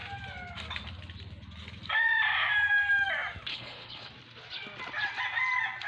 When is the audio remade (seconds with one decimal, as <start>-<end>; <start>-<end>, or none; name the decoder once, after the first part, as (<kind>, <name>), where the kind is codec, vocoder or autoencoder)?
3.5-4.1 (codec, HILCodec)